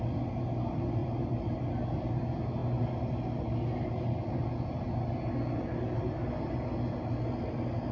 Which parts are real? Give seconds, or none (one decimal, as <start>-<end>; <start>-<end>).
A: 0.0-1.0; 1.6-7.9